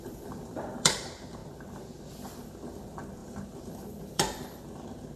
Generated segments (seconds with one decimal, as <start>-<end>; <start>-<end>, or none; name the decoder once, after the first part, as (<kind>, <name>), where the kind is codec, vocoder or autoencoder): 0.0-1.4 (vocoder, BigVGAN v2); 2.4-5.2